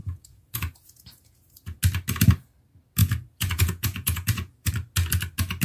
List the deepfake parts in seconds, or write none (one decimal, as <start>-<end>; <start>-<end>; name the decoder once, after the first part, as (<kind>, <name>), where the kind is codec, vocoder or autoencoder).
0.0-1.8 (vocoder, Vocos); 3.0-4.7